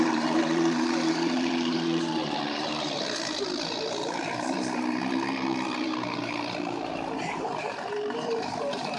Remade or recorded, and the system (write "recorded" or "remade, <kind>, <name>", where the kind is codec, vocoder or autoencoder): remade, vocoder, BigVGAN v2